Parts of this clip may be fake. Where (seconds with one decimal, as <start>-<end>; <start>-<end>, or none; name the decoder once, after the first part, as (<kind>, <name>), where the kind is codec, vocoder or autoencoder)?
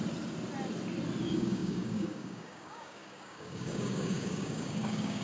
1.2-5.2 (codec, DAC)